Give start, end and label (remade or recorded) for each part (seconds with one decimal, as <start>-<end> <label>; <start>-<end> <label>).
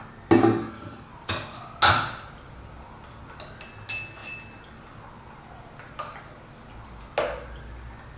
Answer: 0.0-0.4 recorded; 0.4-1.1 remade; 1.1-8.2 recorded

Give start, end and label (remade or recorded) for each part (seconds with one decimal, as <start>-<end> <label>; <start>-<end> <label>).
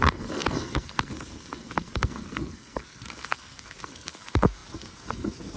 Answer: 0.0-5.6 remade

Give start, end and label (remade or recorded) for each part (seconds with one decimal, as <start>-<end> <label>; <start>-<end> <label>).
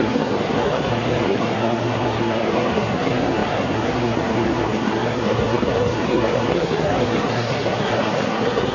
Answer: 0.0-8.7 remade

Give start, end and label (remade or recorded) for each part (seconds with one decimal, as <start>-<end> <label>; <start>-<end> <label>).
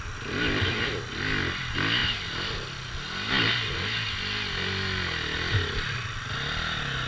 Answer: 0.0-7.1 recorded